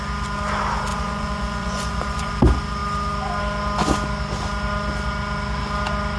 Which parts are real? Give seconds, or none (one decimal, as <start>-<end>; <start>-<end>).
0.0-0.9; 2.3-6.2